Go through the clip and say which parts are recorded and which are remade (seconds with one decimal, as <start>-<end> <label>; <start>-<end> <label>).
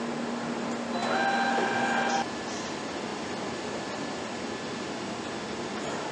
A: 0.0-6.1 recorded